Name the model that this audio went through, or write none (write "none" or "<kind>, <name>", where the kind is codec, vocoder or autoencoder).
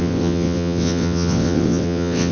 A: vocoder, WaveNeXt